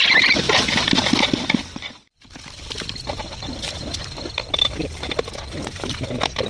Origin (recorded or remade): recorded